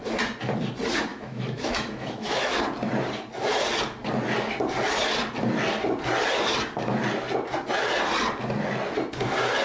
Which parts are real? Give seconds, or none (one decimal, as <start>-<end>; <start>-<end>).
0.0-1.1; 2.6-9.6

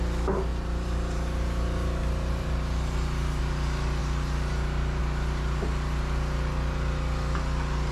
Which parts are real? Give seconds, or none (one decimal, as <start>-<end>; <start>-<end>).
0.0-0.5; 3.4-7.9